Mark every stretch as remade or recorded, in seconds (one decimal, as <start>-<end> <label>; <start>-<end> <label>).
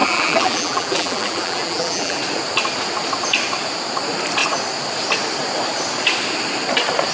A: 0.0-2.2 remade; 2.2-7.1 recorded